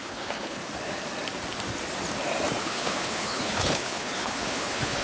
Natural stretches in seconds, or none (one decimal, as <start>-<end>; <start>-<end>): 0.6-2.6